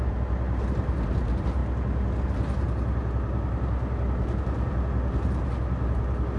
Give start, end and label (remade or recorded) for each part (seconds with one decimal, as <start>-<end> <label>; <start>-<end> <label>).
0.0-6.4 recorded

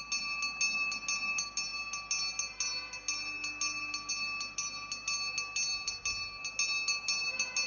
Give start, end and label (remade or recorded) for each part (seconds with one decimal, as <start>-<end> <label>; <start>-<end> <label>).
0.0-7.7 recorded

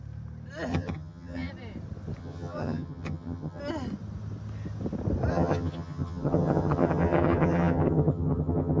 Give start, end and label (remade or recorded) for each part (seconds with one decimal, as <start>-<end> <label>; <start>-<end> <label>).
0.0-0.7 recorded; 0.7-1.5 remade; 1.5-2.2 recorded; 2.2-3.6 remade; 3.6-5.3 recorded; 5.3-8.8 remade

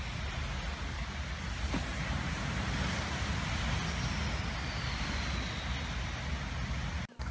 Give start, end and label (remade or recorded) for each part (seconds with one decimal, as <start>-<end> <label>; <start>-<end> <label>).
0.0-1.9 recorded; 1.9-3.3 remade; 3.3-7.3 recorded

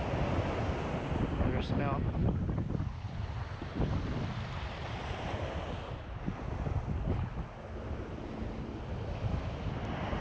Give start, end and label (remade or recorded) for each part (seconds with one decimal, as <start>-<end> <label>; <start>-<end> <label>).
0.0-10.2 recorded

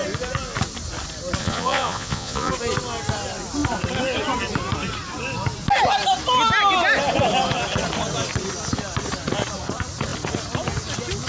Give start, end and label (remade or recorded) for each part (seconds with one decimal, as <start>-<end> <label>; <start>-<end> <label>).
0.0-1.4 recorded; 1.4-2.5 remade; 2.5-11.3 recorded

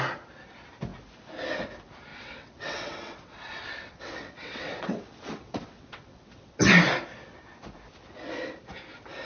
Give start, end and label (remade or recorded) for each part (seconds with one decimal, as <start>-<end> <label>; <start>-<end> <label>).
0.0-2.1 recorded; 2.1-6.6 remade; 6.6-9.2 recorded